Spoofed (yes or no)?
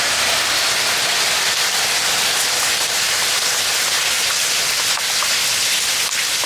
no